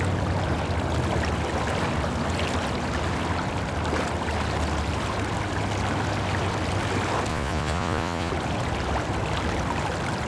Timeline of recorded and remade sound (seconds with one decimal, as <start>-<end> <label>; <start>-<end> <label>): 0.0-7.3 recorded; 7.3-8.3 remade; 8.3-10.3 recorded